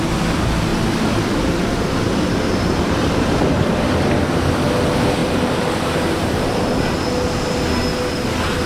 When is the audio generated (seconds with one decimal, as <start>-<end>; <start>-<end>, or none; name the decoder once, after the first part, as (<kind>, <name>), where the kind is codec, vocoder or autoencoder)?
0.7-3.8 (vocoder, BigVGAN v2); 5.2-6.9